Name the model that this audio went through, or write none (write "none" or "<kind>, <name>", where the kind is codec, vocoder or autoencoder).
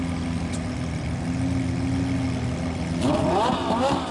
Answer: none